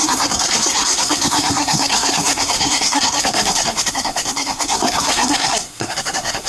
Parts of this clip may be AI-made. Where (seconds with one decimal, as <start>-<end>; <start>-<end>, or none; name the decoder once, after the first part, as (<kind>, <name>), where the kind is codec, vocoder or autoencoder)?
0.0-6.5 (codec, SNAC)